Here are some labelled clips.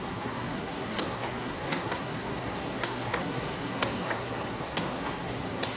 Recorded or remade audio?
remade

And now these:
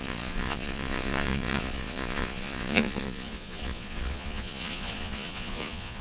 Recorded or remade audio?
remade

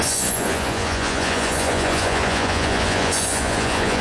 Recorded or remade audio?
remade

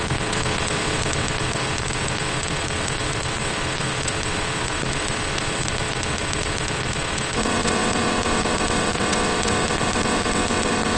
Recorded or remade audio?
remade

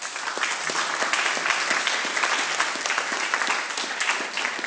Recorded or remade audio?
recorded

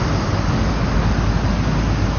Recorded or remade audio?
recorded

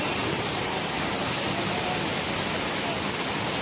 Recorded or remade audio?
remade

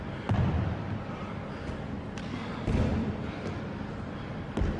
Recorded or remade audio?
recorded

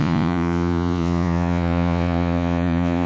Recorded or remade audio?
remade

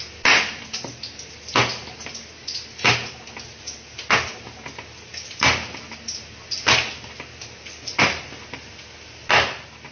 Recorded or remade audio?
recorded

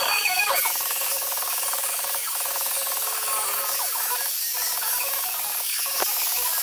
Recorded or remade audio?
remade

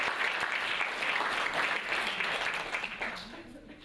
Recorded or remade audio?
recorded